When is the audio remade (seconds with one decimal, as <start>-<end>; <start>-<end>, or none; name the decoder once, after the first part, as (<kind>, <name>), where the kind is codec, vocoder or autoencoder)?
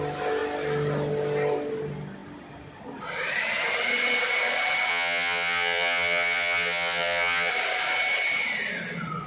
4.9-7.5 (vocoder, HiFi-GAN)